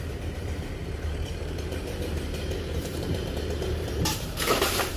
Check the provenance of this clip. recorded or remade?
remade